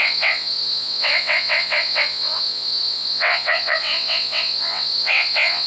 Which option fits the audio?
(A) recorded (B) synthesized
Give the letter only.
B